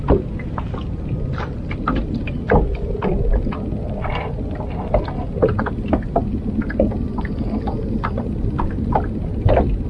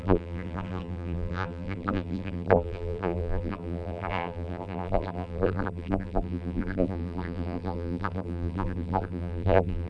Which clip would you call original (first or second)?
first